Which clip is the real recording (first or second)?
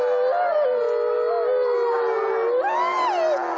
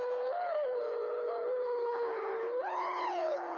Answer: first